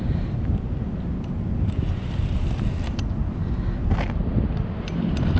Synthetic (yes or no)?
no